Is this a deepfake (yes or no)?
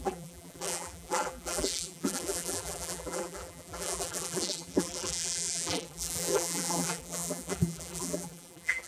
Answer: yes